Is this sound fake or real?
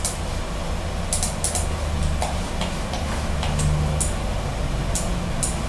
real